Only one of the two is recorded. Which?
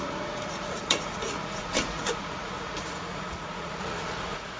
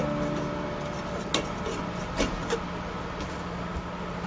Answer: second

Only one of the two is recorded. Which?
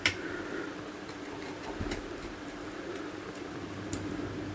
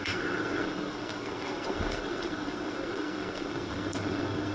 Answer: first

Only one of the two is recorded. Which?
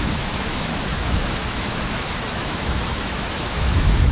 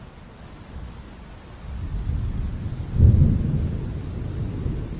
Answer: second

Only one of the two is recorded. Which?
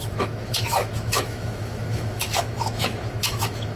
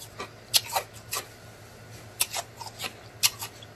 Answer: second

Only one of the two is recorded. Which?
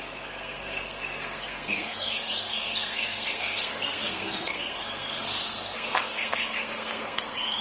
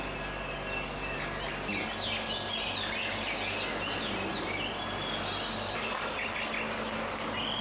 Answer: second